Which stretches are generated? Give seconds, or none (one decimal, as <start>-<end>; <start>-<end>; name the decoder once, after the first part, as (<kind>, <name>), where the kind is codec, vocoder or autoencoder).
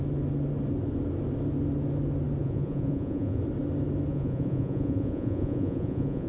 2.4-3.4 (vocoder, Vocos); 4.1-6.3